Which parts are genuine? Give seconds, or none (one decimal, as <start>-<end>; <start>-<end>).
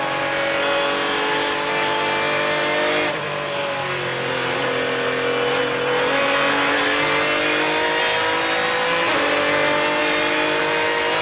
0.0-11.2